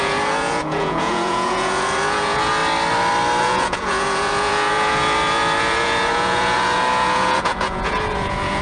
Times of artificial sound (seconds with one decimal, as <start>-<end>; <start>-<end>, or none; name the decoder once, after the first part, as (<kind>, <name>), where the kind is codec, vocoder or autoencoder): 0.0-2.6 (vocoder, Vocos); 3.4-8.6